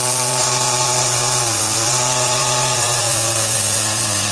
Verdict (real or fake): fake